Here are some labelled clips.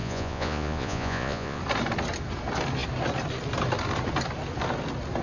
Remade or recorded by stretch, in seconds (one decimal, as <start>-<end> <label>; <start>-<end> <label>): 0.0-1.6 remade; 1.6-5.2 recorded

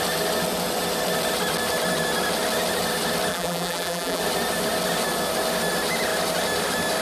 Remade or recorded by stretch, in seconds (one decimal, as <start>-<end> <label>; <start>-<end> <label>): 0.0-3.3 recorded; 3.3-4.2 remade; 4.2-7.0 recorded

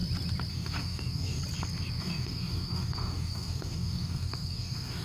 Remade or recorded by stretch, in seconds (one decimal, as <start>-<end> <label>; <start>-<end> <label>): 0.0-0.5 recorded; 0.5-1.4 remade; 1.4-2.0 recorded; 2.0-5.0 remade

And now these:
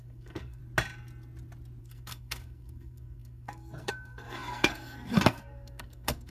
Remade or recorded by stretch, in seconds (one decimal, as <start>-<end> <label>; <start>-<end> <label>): 0.0-0.6 remade; 0.6-1.8 recorded; 1.8-6.3 remade

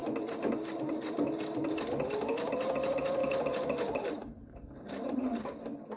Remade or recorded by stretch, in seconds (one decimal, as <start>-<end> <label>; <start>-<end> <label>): 0.0-3.2 recorded; 3.2-5.2 remade; 5.2-6.0 recorded

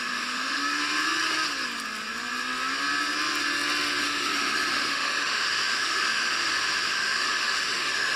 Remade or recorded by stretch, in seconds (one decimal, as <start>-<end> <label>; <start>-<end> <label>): 0.0-0.6 remade; 0.6-4.0 recorded; 4.0-8.2 remade